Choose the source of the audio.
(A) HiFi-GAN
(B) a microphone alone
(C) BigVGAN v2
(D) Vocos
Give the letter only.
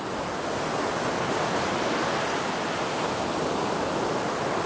B